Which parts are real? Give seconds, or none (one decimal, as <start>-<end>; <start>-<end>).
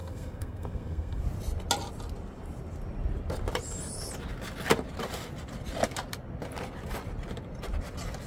1.2-8.3